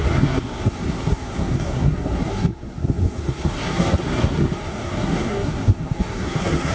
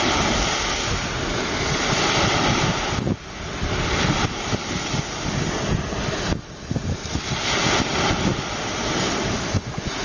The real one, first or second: second